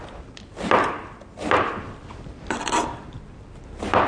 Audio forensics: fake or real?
real